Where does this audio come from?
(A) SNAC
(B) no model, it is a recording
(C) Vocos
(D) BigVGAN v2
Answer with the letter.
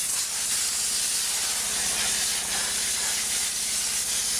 B